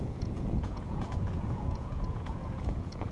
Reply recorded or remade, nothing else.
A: remade